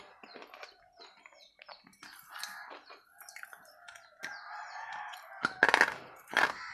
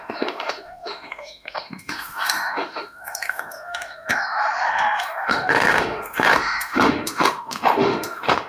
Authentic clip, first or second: first